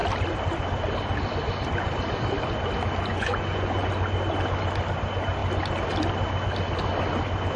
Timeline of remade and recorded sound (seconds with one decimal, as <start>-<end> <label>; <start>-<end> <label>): 0.0-3.1 recorded; 3.1-3.9 remade; 3.9-7.6 recorded